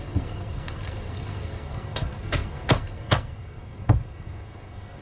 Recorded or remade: remade